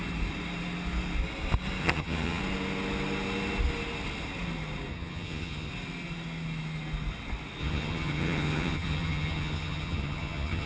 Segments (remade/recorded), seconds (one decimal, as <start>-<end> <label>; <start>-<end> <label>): 0.0-1.8 recorded; 1.8-2.4 remade; 2.4-4.9 recorded; 4.9-5.7 remade; 5.7-7.6 recorded; 7.6-10.7 remade